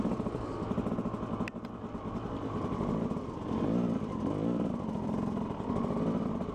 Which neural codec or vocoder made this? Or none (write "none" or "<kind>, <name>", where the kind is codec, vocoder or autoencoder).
none